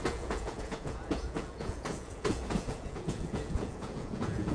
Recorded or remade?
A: remade